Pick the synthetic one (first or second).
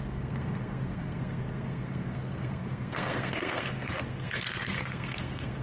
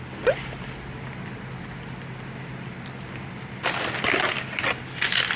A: first